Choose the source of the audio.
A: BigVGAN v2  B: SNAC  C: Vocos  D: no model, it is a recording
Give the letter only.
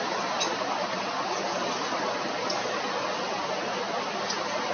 D